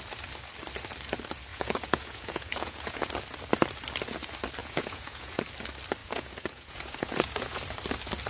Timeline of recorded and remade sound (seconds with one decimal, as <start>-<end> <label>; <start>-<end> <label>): 0.0-1.5 recorded; 1.5-3.1 remade; 3.1-4.6 recorded; 4.6-5.4 remade; 5.4-6.0 recorded; 6.0-7.6 remade; 7.6-8.3 recorded